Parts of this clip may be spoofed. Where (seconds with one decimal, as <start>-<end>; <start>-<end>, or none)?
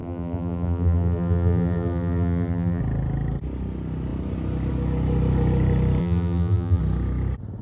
0.0-2.8; 6.0-6.8